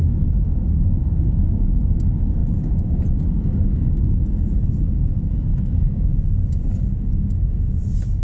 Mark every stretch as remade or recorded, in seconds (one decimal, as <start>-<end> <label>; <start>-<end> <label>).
0.0-5.5 recorded; 5.5-6.1 remade; 6.1-8.2 recorded